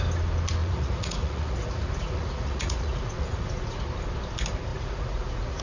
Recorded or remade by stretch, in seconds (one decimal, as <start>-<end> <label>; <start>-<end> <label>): 0.0-0.6 recorded; 0.6-3.8 remade; 3.8-4.7 recorded; 4.7-5.6 remade